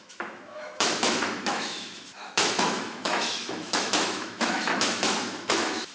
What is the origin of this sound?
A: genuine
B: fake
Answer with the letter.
B